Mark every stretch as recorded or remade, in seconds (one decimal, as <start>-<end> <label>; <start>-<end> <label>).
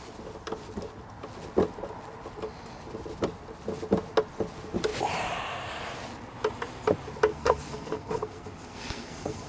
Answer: 0.0-7.3 recorded; 7.3-9.5 remade